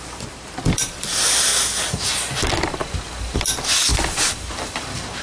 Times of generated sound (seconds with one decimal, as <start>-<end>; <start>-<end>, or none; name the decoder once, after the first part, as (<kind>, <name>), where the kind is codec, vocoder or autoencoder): 0.0-1.5 (vocoder, BigVGAN v2); 2.1-2.8; 3.4-5.2